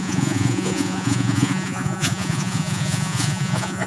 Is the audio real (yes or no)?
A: no